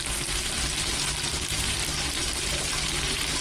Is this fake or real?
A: fake